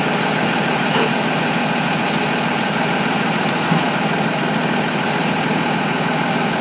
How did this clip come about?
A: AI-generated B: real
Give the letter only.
B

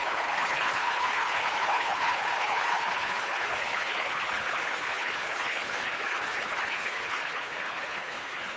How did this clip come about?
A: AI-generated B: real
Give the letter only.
A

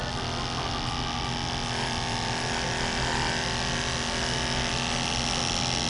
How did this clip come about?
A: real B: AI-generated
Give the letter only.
A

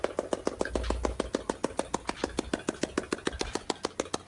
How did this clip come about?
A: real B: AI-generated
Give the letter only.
A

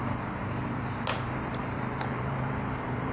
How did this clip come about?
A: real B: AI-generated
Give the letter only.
B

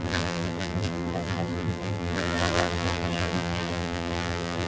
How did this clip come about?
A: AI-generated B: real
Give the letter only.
A